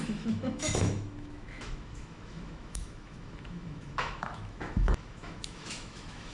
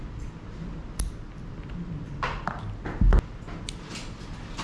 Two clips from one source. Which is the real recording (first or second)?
second